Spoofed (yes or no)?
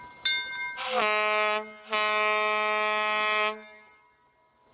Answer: no